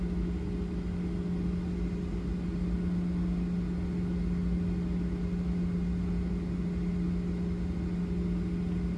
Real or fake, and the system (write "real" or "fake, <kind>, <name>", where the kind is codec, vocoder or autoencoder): real